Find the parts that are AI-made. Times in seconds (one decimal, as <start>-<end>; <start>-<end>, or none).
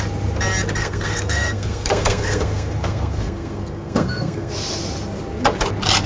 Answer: 0.8-4.5